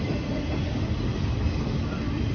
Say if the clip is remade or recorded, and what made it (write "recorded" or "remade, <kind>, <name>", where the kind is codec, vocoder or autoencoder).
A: recorded